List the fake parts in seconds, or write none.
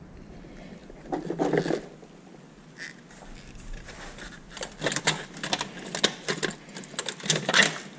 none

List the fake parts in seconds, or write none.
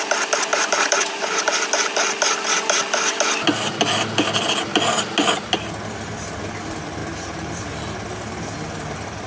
0.5-1.9 (vocoder, BigVGAN v2); 7.0-7.9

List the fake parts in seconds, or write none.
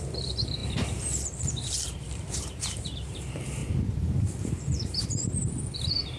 0.0-6.2 (vocoder, BigVGAN v2)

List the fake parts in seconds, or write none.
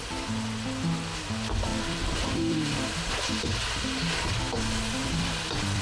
1.7-3.2 (vocoder, BigVGAN v2); 5.0-5.8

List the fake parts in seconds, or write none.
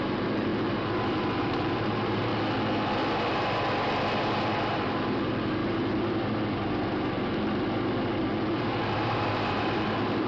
0.0-0.5 (vocoder, BigVGAN v2); 1.4-2.3; 4.8-5.6; 8.6-10.3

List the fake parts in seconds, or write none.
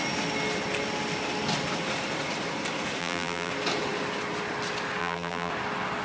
3.0-3.5 (vocoder, BigVGAN v2); 5.0-5.5